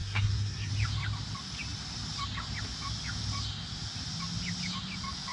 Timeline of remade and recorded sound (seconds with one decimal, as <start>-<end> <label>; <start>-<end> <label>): 0.0-0.7 remade; 0.7-5.3 recorded